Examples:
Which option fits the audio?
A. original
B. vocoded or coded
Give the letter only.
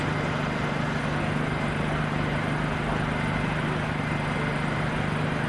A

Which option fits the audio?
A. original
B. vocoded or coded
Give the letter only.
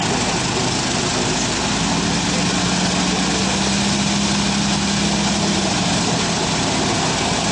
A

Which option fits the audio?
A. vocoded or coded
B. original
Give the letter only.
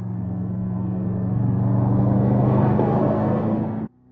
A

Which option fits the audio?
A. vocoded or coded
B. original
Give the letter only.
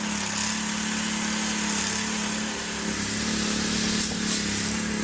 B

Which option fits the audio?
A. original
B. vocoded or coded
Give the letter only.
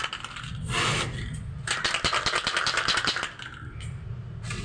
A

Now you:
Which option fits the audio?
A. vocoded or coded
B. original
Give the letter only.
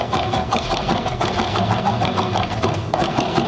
A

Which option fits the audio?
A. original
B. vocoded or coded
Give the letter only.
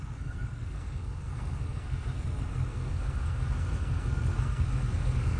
B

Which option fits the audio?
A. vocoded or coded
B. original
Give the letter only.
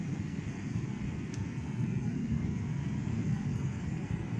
A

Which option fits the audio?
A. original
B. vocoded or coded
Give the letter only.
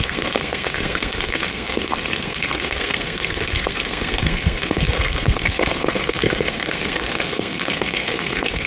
B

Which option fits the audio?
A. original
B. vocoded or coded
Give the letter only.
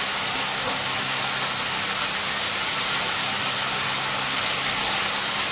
A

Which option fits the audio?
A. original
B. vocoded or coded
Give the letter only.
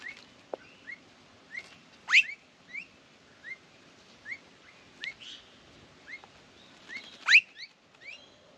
A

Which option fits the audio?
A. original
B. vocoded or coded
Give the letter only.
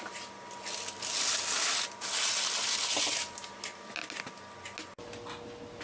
A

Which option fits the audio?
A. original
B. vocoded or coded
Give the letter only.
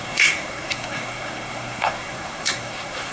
B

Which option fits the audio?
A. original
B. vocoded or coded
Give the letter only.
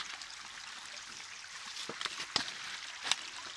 A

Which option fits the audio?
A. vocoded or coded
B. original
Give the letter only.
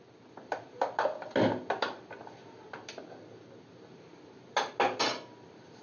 B